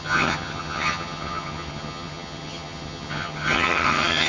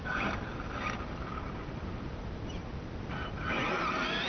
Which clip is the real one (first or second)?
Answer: second